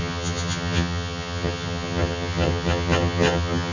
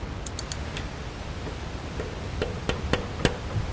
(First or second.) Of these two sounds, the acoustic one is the second